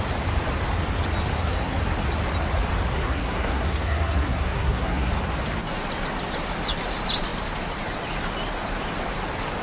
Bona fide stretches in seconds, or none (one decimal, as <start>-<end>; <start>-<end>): 0.0-1.3; 1.8-2.9; 5.1-9.6